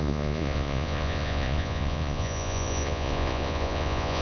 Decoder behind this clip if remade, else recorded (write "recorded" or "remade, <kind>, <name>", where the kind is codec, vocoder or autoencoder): remade, vocoder, Vocos